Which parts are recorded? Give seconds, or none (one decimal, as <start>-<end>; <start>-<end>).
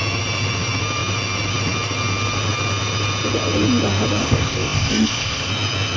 0.0-4.2; 5.5-6.0